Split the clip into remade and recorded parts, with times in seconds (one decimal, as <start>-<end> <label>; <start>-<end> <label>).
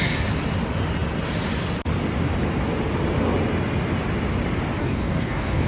0.0-4.8 recorded; 4.8-5.7 remade